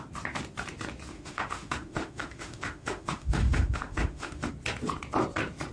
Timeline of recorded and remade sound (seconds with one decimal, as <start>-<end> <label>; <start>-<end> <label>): 0.0-1.1 recorded; 1.1-4.5 remade; 4.5-5.7 recorded